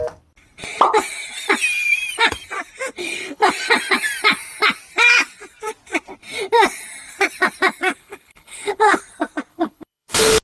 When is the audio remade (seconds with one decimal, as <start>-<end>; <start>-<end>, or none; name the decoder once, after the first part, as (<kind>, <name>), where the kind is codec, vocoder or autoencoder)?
3.0-3.5 (codec, HILCodec); 8.0-9.0; 9.5-10.4